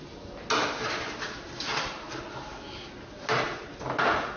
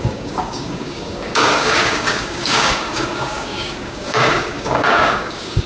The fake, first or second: second